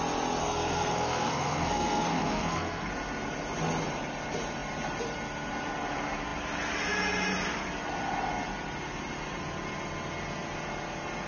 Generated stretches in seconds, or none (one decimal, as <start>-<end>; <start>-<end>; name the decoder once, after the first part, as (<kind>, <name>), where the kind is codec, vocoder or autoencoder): 0.4-2.9 (codec, SNAC)